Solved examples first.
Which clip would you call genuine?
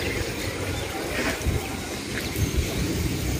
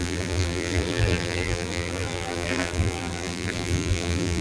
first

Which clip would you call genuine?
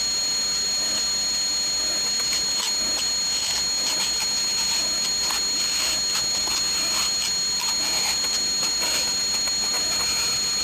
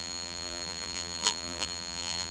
first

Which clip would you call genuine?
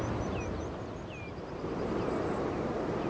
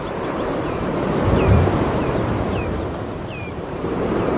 first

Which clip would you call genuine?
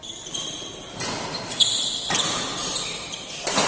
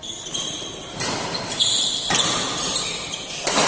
first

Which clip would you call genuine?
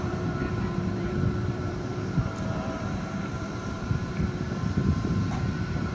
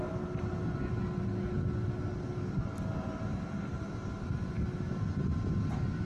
second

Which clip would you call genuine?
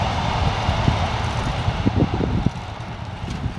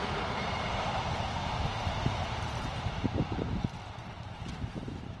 first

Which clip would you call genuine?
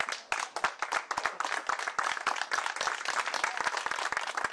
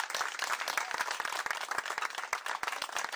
first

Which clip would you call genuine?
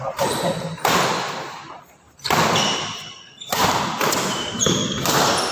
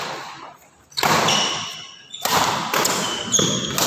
second